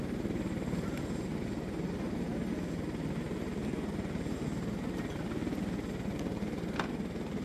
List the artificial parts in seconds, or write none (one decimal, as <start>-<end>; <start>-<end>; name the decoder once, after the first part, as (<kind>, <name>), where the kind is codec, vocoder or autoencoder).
none